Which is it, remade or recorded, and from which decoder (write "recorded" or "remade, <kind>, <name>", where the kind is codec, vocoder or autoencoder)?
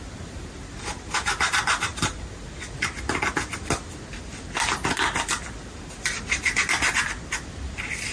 recorded